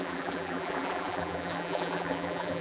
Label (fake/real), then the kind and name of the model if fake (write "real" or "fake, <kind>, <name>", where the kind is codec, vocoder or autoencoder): fake, vocoder, BigVGAN v2